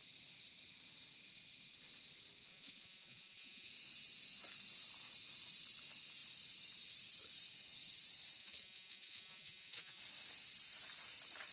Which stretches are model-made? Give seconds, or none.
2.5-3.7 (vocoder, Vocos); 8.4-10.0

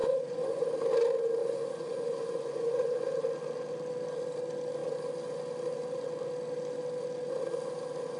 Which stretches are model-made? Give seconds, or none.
0.0-0.7 (vocoder, Vocos); 1.4-3.0

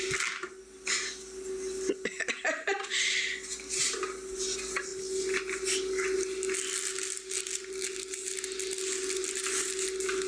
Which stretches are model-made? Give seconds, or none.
none

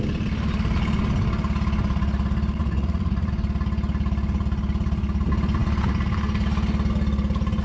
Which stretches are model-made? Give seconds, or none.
2.6-3.3 (vocoder, Vocos)

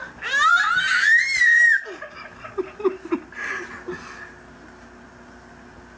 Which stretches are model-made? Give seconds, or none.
none

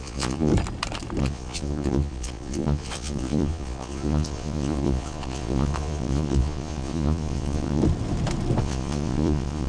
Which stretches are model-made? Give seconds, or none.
0.0-0.5 (vocoder, Vocos); 1.2-7.8; 8.6-9.7